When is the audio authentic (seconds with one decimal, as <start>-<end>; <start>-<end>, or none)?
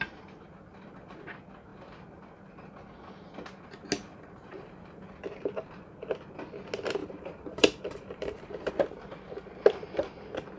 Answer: 0.0-4.1; 5.1-7.0; 8.7-10.6